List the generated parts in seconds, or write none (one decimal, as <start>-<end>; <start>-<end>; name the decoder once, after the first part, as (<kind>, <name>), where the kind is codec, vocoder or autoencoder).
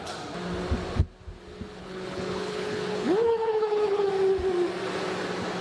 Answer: 1.8-4.1 (codec, HILCodec)